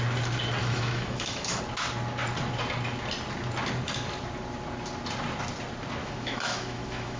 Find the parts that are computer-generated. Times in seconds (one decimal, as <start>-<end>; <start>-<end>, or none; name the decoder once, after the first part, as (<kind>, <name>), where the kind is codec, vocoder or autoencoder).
0.6-1.6 (autoencoder, DAC-VAE); 6.0-7.2

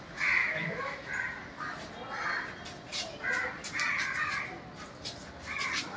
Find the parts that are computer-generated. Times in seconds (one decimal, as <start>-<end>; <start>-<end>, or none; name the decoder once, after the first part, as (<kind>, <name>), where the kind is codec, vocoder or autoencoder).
0.4-1.1 (autoencoder, DAC-VAE)

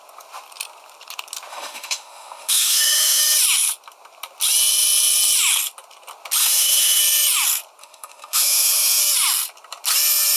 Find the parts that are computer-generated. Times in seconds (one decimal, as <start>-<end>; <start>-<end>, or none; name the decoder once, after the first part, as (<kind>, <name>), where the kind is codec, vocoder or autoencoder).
1.5-3.2 (autoencoder, DAC-VAE); 6.4-7.0; 7.8-9.0

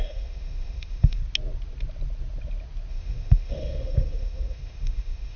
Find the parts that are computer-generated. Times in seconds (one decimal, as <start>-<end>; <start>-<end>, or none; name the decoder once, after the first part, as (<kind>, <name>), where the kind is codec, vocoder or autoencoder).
0.0-1.2 (autoencoder, DAC-VAE); 2.9-5.4

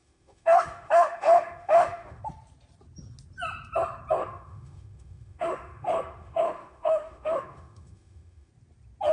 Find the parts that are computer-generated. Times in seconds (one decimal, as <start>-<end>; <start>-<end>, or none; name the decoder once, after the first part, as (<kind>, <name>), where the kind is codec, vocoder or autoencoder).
0.0-2.2 (autoencoder, DAC-VAE); 4.2-8.5

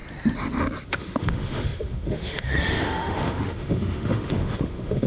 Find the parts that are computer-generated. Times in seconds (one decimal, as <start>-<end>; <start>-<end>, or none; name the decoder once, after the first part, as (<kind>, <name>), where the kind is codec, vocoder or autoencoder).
0.9-5.1 (autoencoder, DAC-VAE)